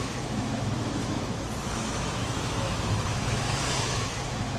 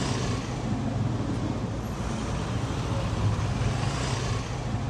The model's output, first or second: first